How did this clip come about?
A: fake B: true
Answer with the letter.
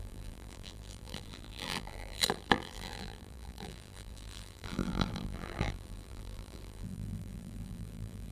A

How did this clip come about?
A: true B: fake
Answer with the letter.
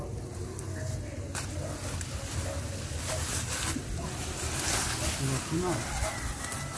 A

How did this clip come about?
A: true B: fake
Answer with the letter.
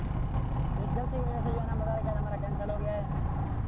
A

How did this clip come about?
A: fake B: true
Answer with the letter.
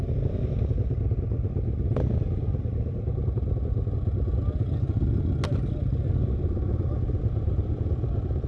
B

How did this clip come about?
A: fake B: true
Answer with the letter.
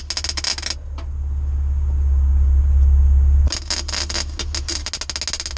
B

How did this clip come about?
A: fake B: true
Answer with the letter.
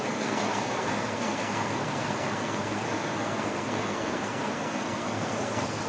A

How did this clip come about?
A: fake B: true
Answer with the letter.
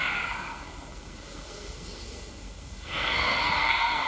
A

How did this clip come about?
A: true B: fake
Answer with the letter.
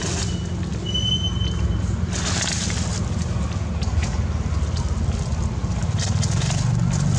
A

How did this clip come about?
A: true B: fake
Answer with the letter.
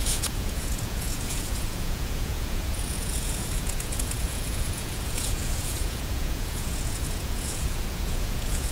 B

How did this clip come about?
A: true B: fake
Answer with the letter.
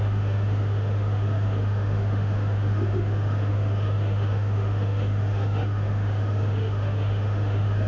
B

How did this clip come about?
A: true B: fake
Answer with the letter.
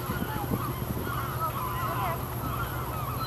A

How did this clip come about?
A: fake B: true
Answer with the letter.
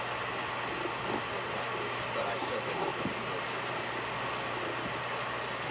B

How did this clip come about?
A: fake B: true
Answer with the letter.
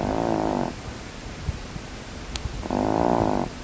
B